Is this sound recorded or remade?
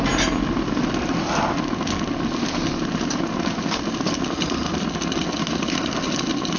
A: recorded